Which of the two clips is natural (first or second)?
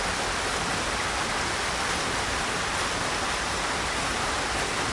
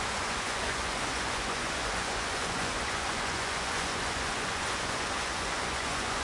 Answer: first